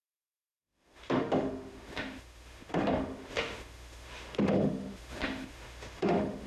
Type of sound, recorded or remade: remade